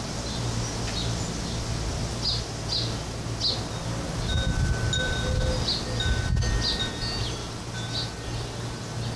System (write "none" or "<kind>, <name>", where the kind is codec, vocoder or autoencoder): none